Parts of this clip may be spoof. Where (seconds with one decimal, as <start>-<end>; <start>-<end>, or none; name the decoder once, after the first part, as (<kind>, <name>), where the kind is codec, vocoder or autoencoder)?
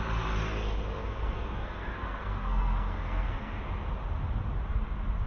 1.0-3.6 (codec, SNAC)